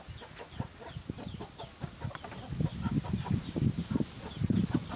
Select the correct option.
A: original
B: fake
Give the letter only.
A